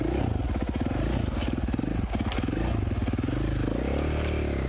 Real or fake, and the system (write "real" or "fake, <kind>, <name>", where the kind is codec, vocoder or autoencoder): real